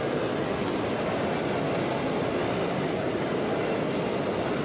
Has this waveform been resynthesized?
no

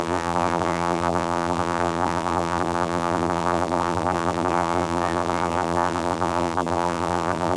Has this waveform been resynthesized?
yes